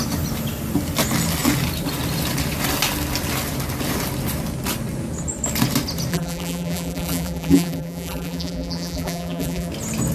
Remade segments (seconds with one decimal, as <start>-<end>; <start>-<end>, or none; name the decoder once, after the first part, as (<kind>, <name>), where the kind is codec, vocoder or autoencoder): 6.1-9.7 (vocoder, BigVGAN v2)